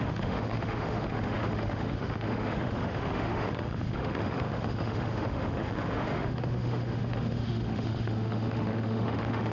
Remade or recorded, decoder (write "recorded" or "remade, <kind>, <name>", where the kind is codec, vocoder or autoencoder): remade, autoencoder, DAC-VAE